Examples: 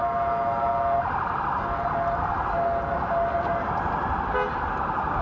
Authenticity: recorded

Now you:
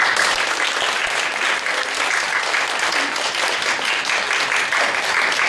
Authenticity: recorded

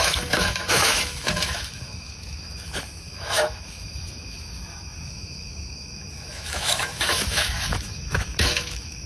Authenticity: remade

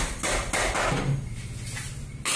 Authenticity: recorded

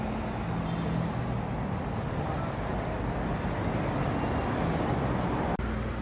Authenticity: recorded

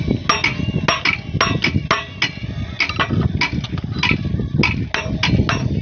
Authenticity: recorded